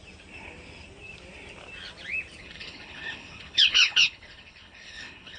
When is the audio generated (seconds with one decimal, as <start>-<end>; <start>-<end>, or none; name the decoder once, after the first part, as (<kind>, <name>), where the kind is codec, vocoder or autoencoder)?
2.4-5.4 (codec, HILCodec)